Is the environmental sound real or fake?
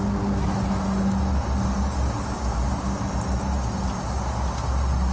real